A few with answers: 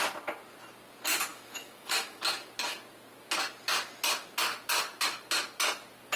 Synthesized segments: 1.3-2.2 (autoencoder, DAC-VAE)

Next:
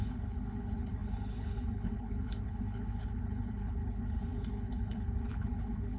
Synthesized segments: 0.0-6.0 (codec, HILCodec)

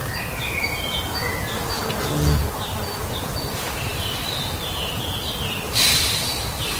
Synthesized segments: 3.0-6.8 (vocoder, BigVGAN v2)

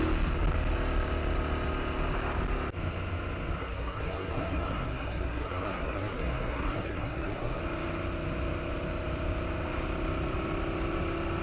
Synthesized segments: 3.6-7.6 (codec, SNAC)